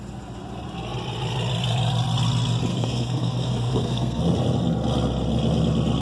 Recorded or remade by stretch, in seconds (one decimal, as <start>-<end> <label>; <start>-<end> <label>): 0.0-2.7 recorded; 2.7-4.2 remade; 4.2-6.0 recorded